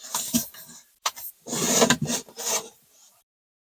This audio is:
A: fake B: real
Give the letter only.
A